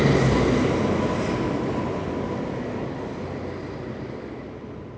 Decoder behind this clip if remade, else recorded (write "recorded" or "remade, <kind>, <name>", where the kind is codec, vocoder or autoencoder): recorded